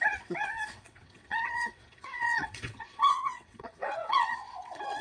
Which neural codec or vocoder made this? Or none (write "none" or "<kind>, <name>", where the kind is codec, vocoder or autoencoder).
vocoder, WaveNeXt